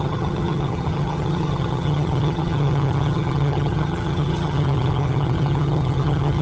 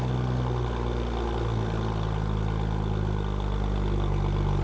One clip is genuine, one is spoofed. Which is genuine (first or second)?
second